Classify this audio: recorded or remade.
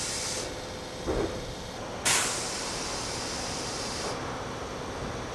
recorded